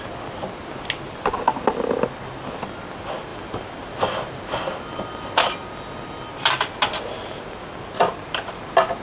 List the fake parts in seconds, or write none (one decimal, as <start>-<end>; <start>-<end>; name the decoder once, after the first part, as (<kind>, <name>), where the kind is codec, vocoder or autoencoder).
none